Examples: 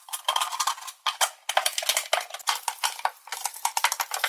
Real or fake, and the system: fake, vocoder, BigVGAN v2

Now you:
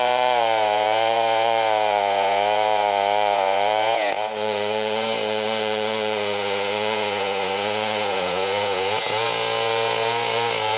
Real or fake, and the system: fake, vocoder, Vocos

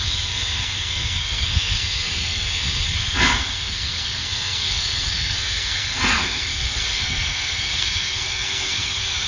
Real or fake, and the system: fake, codec, SNAC